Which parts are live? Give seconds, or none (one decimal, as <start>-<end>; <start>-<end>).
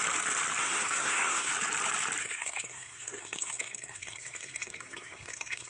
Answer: 0.0-0.6; 1.5-2.2